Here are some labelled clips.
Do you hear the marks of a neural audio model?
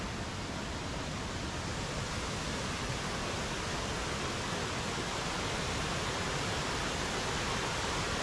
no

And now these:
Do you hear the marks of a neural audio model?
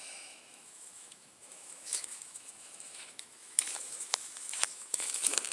yes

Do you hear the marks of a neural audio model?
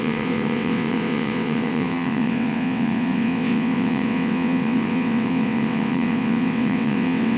yes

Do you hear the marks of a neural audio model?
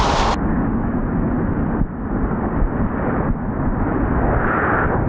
no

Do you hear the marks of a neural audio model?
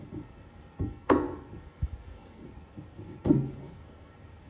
yes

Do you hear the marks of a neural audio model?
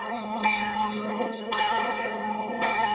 yes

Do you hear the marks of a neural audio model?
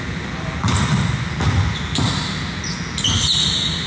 no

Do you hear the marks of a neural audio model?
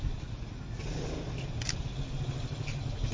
no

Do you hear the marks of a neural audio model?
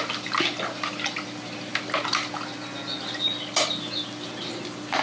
no